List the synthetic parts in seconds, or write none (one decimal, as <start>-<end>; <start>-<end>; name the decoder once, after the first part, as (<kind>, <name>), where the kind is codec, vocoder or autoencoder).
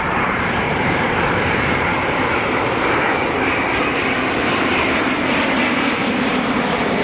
0.0-2.0 (vocoder, BigVGAN v2); 4.4-7.0